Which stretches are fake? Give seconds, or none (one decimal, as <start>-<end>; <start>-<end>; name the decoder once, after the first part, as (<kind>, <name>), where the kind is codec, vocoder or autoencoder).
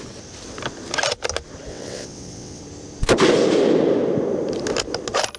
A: 1.7-2.6 (vocoder, WaveNeXt)